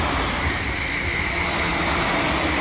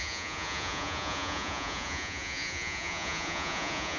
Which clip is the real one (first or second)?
first